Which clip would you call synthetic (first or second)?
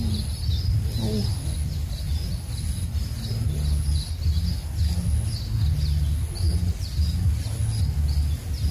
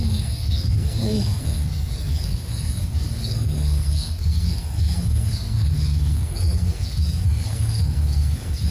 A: second